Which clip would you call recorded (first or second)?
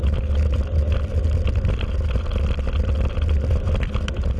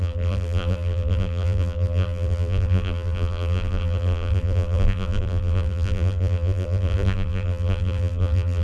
first